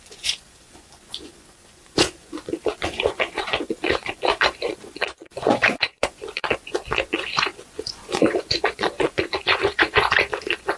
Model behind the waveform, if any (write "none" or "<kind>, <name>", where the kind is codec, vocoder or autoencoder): vocoder, Vocos